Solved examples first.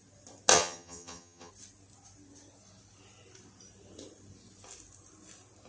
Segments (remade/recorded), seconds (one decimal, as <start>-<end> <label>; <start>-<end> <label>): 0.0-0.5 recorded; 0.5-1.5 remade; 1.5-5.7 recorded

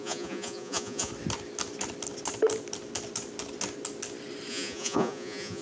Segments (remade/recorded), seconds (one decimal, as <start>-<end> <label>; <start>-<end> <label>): 0.0-1.1 remade; 1.1-4.5 recorded; 4.5-5.6 remade

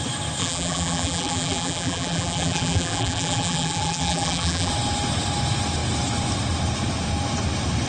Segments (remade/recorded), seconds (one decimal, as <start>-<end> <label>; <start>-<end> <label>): 0.0-0.4 recorded; 0.4-4.7 remade; 4.7-7.9 recorded